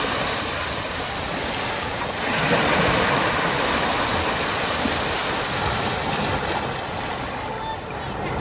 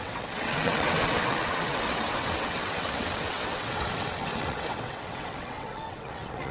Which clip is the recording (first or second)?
first